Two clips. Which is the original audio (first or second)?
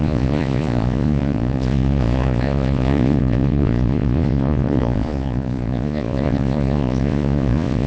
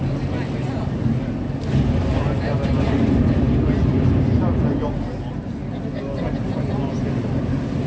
second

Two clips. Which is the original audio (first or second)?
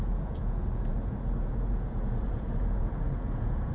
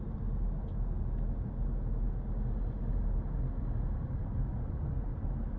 second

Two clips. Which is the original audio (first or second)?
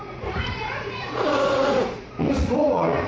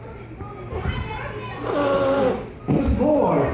second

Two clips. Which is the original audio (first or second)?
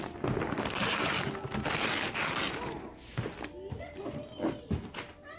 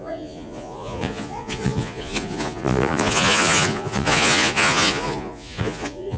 first